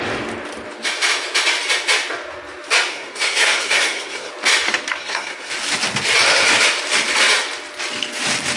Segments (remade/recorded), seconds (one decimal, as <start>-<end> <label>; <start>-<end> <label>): 0.0-2.9 recorded; 2.9-4.3 remade; 4.3-5.0 recorded; 5.0-5.5 remade; 5.5-8.6 recorded